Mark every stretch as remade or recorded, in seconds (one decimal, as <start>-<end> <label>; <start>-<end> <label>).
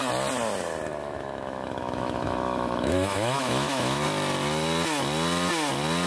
0.0-1.0 recorded; 1.0-4.0 remade; 4.0-6.1 recorded